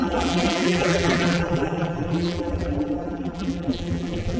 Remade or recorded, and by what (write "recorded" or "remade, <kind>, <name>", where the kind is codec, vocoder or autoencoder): remade, vocoder, BigVGAN v2